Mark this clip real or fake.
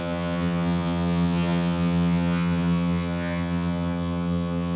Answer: fake